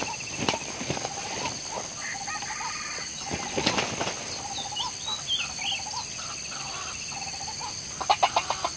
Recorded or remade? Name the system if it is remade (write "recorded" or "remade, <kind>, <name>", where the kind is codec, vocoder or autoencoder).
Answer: recorded